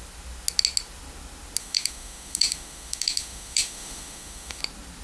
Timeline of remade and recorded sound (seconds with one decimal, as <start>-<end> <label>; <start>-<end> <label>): 0.0-1.6 recorded; 1.6-4.6 remade; 4.6-5.0 recorded